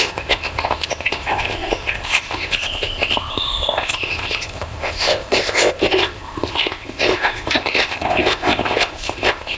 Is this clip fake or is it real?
fake